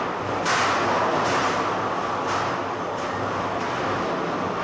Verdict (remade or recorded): recorded